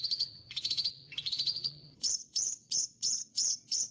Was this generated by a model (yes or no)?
yes